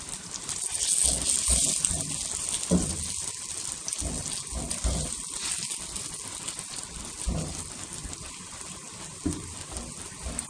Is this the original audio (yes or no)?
yes